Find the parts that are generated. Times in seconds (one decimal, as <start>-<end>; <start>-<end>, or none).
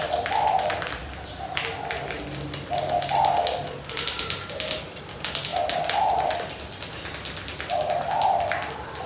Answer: none